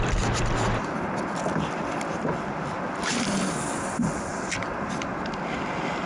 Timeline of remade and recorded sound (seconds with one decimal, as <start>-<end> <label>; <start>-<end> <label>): 0.0-4.3 recorded; 4.3-5.3 remade; 5.3-6.1 recorded